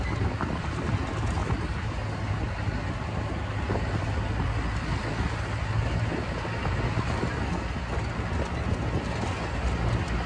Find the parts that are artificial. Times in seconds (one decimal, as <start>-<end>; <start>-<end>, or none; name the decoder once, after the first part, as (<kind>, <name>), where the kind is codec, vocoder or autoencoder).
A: none